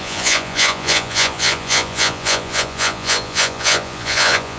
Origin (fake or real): fake